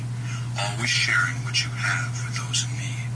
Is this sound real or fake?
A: real